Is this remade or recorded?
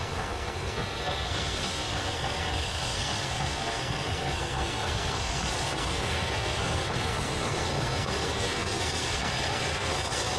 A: remade